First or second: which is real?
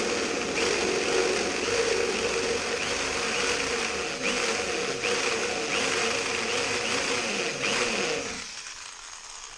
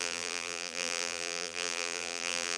first